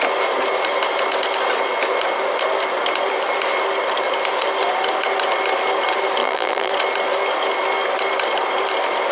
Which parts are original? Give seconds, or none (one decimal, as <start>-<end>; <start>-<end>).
0.0-6.2; 6.7-9.1